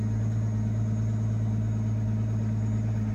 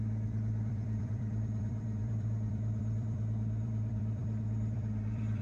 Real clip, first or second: first